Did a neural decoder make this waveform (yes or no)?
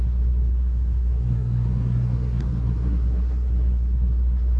yes